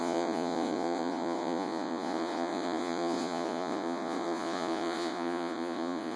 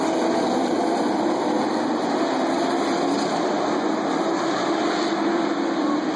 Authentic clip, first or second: second